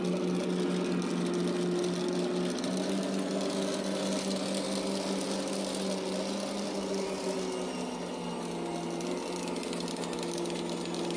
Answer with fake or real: real